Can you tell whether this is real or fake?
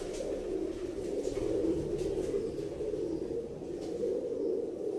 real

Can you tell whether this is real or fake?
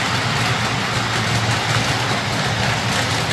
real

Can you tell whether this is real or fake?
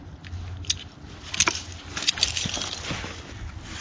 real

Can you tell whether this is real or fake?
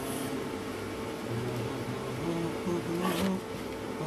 real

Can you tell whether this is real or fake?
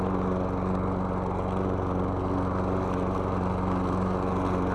real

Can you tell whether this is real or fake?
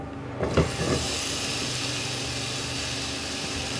real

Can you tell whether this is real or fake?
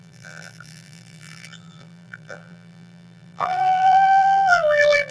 fake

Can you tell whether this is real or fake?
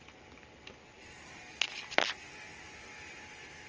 real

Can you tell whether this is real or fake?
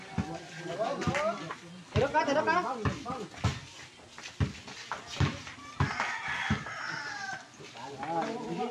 real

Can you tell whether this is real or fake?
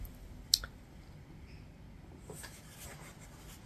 real